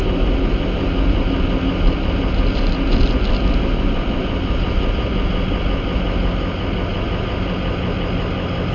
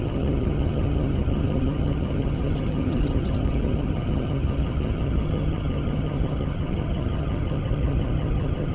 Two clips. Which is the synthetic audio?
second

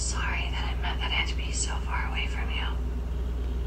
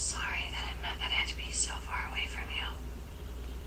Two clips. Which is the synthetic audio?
second